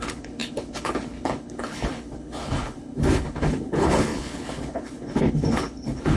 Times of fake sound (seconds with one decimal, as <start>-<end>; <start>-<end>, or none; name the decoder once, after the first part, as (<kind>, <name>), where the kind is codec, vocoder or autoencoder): 0.0-6.2 (codec, HILCodec)